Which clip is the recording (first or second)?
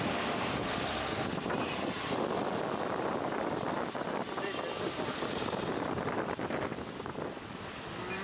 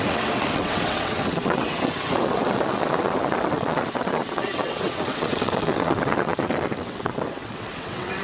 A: first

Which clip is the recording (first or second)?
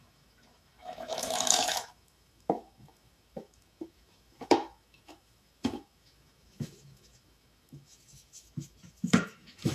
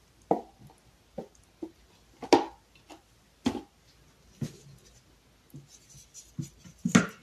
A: second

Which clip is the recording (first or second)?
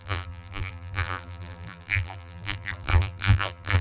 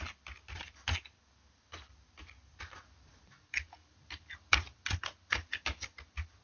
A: second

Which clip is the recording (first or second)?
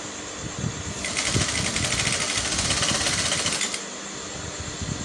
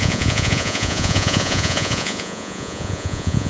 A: first